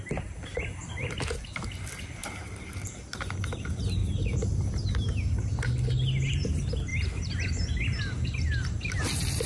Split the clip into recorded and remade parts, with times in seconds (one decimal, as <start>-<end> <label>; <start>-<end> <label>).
0.0-0.5 recorded; 0.5-1.1 remade; 1.1-2.2 recorded; 2.2-3.0 remade; 3.0-4.0 recorded; 4.0-4.7 remade; 4.7-6.9 recorded; 6.9-7.4 remade; 7.4-9.5 recorded